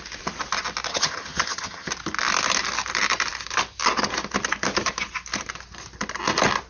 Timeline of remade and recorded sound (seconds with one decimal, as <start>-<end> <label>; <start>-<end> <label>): 0.0-0.9 recorded; 0.9-1.9 remade; 1.9-6.7 recorded